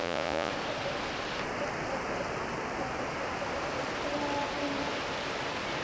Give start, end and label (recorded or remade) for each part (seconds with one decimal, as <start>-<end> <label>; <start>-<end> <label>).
0.0-0.5 remade; 0.5-5.8 recorded